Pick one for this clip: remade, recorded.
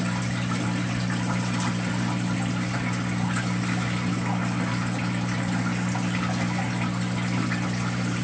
recorded